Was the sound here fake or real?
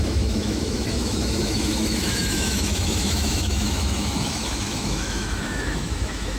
fake